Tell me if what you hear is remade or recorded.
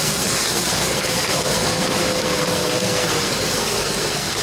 remade